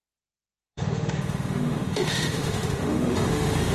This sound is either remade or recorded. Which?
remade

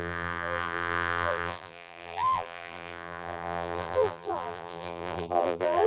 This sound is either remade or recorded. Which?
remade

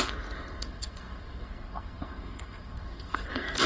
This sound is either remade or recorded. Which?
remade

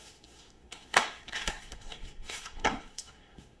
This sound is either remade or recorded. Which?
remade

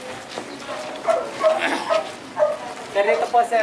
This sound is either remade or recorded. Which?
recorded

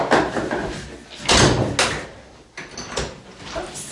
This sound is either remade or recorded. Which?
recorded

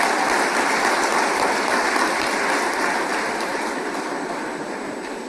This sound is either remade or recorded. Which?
recorded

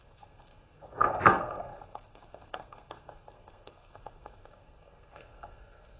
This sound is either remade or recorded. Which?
remade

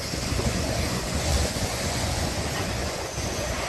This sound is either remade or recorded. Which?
remade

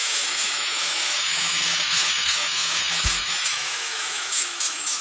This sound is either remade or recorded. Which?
remade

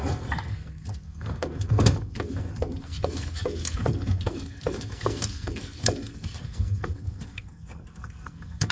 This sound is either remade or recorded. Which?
remade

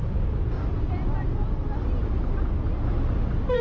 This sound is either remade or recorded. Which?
recorded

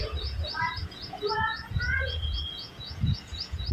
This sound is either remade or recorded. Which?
remade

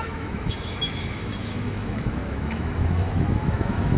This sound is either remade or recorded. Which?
remade